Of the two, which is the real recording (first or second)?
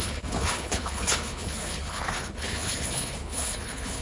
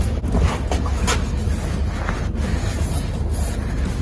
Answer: second